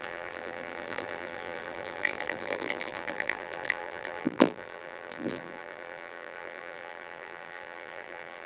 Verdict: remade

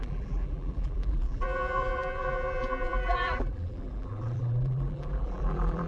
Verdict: remade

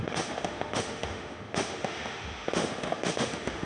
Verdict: remade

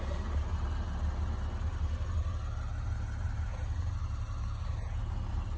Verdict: recorded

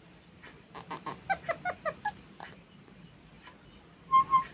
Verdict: recorded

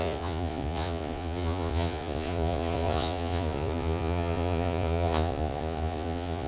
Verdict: remade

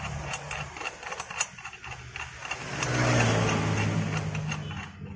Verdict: recorded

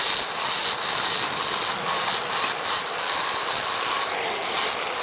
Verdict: recorded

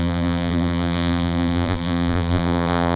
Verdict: remade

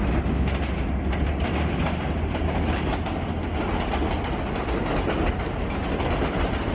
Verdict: recorded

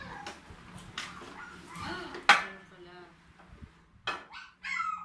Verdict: recorded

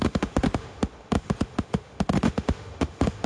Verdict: remade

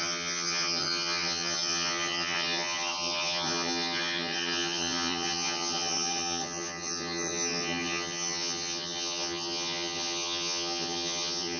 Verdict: remade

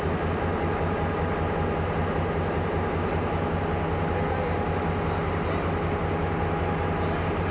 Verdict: recorded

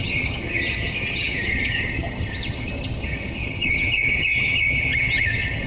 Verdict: remade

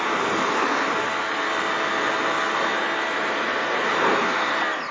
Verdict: recorded